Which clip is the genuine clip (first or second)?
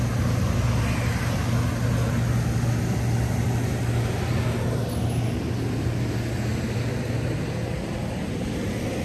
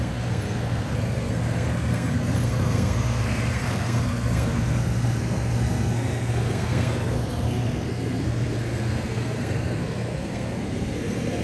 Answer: first